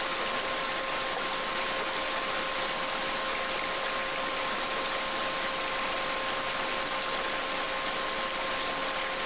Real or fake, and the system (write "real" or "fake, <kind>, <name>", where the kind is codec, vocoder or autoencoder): real